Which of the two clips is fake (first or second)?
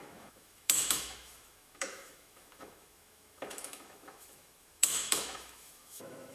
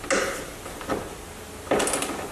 first